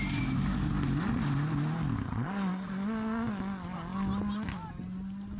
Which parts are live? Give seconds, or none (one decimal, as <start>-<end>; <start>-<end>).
0.0-2.1; 2.7-5.4